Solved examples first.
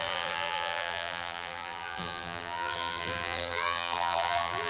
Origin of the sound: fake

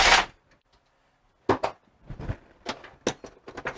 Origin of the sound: real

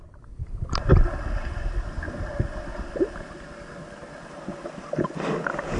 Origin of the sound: real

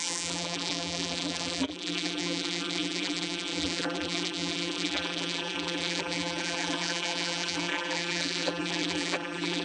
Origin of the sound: fake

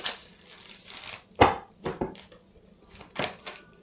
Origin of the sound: real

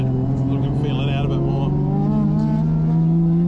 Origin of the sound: real